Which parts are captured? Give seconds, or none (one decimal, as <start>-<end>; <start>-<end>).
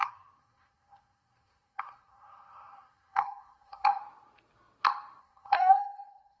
4.0-5.2